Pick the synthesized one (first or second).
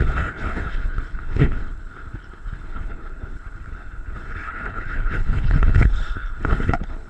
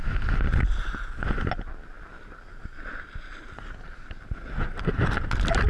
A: first